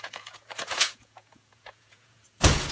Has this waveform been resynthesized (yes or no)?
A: yes